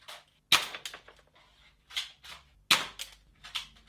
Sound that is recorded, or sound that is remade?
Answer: recorded